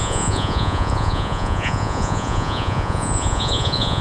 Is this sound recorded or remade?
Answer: remade